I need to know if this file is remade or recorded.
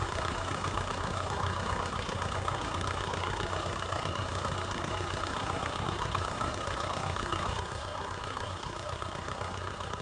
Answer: remade